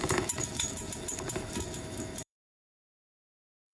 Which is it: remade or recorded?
remade